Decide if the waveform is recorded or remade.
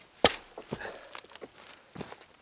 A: recorded